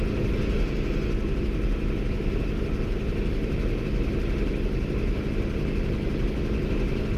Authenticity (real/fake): real